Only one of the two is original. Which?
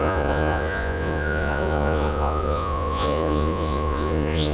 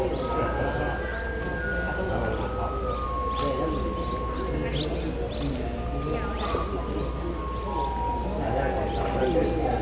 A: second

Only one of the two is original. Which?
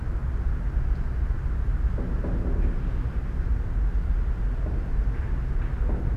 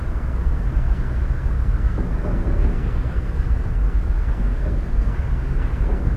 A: first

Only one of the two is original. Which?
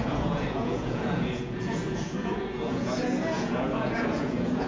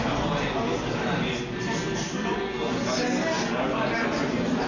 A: second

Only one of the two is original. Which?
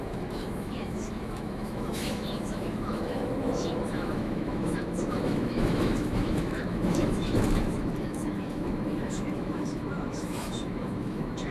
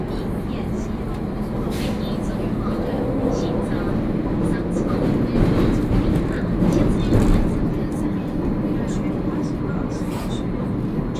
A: second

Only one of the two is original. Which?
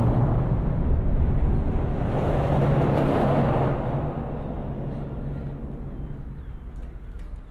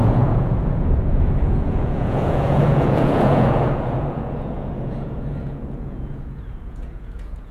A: first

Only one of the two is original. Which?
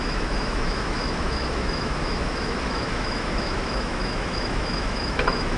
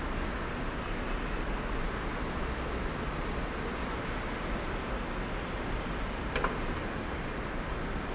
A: second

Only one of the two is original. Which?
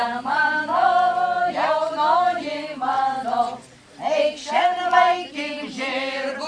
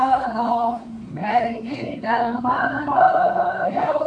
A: first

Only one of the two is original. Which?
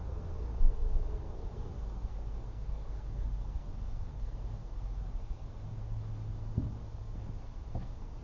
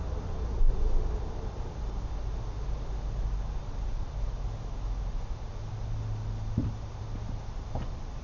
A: second